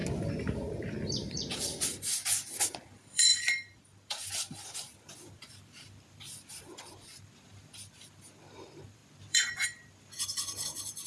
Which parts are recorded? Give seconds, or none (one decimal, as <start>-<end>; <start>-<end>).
0.0-1.3